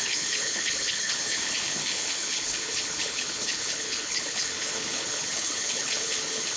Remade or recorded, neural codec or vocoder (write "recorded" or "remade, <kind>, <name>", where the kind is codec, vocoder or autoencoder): remade, codec, HILCodec